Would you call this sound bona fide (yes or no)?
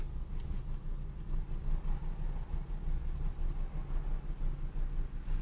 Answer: yes